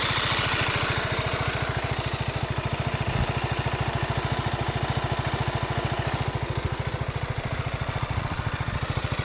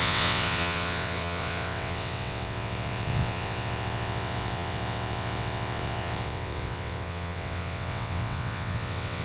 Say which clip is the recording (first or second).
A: first